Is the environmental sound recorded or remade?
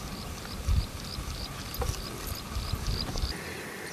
recorded